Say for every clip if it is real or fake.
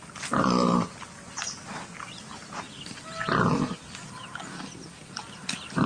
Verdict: real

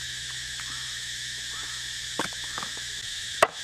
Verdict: fake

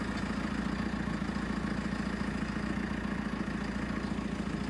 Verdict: real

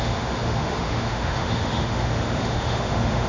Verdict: fake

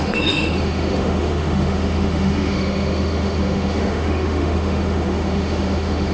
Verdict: fake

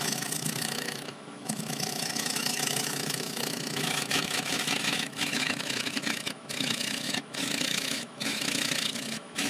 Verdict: fake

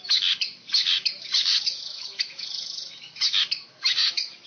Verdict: fake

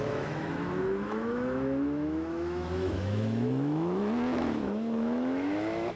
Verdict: fake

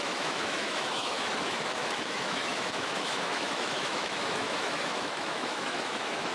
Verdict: fake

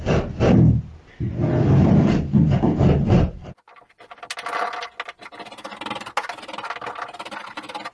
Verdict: real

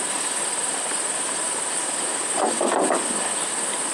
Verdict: real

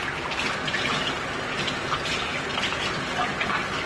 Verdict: real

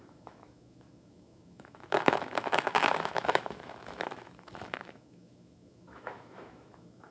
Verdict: fake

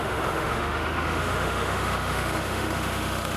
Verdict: fake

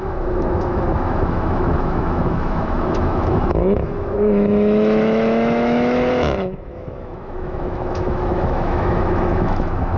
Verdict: fake